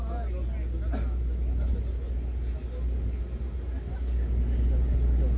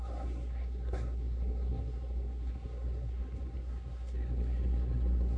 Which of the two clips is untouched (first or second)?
first